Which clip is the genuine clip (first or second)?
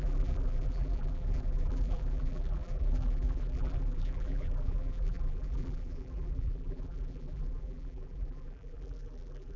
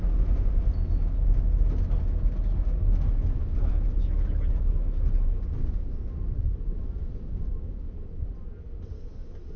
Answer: second